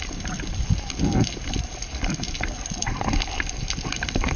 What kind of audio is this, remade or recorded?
recorded